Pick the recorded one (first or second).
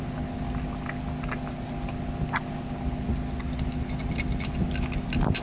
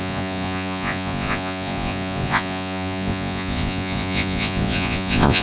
first